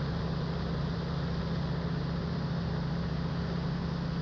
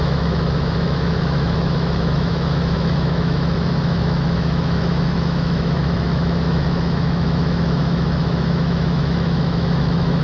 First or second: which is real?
first